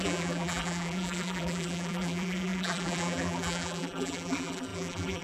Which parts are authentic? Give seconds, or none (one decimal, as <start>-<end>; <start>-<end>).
none